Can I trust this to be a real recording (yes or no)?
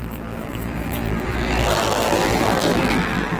no